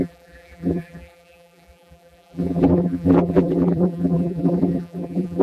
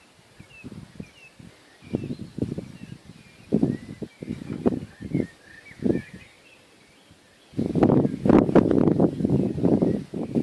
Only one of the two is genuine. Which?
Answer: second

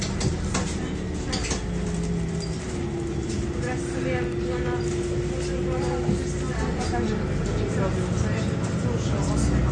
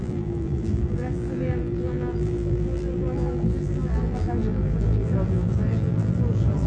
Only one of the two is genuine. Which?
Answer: first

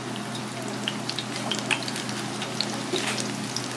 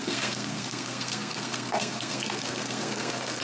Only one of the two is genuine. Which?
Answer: first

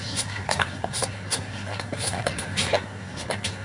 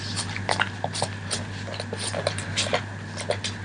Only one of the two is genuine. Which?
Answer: second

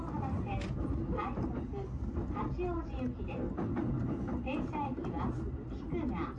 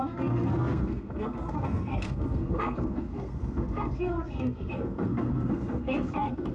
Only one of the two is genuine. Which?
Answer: first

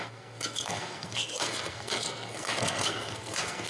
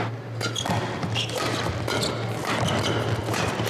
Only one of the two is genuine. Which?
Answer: second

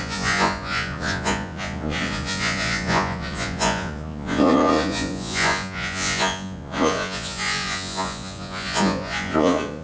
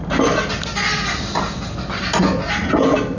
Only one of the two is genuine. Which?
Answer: second